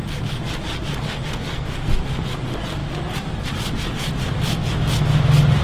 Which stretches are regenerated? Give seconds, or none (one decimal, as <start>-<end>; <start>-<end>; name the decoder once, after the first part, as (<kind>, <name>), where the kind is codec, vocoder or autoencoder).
1.5-2.0 (codec, SNAC)